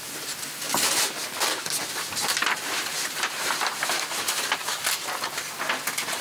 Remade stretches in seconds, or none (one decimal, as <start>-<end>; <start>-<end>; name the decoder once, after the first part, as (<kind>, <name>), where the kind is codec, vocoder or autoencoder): 2.4-4.1 (vocoder, BigVGAN v2)